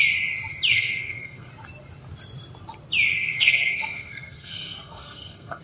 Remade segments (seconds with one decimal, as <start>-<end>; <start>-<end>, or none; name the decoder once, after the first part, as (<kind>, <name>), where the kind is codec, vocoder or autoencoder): 0.7-1.5 (codec, SNAC); 3.1-5.6